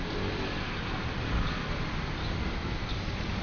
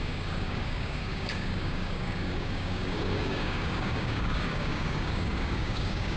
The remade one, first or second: second